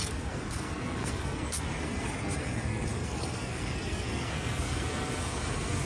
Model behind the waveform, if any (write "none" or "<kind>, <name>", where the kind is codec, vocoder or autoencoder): codec, SNAC